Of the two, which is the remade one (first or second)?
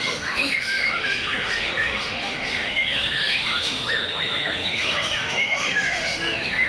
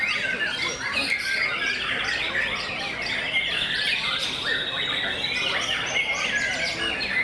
first